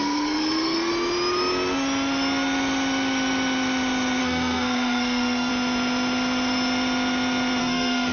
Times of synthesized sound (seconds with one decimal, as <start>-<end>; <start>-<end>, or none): 0.0-0.9; 4.2-5.5; 7.6-8.1